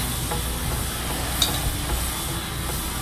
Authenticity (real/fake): real